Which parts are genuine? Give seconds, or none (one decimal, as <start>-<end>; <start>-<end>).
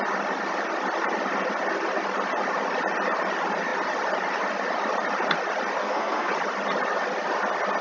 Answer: 0.0-5.8; 6.3-7.8